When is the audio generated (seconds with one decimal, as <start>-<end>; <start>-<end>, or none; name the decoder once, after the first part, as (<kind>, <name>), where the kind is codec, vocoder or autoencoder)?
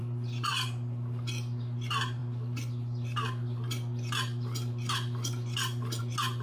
0.0-0.5 (vocoder, BigVGAN v2)